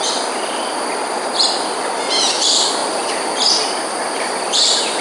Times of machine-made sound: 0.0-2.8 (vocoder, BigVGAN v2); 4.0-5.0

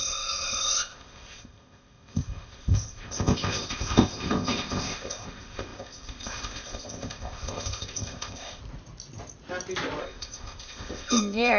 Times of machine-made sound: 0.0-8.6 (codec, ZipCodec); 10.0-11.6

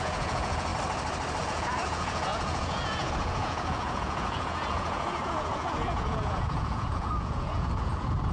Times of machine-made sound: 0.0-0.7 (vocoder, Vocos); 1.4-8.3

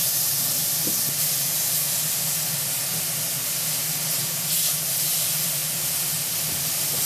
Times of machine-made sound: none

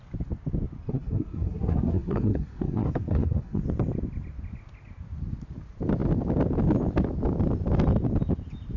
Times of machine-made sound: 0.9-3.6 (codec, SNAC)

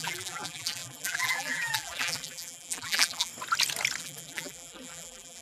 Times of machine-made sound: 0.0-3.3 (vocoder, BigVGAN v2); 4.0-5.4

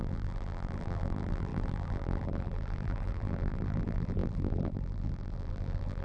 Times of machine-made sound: 0.0-6.0 (vocoder, BigVGAN v2)

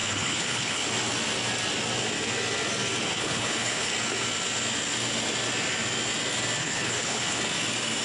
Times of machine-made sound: 0.0-0.9 (codec, HILCodec); 3.2-3.9; 6.6-7.4